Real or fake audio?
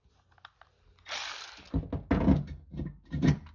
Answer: real